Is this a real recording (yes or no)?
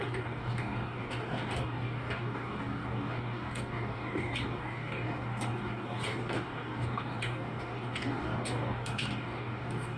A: no